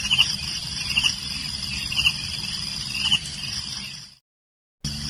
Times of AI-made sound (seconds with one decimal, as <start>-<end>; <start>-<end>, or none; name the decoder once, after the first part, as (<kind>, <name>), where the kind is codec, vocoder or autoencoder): 0.6-3.7 (vocoder, BigVGAN v2)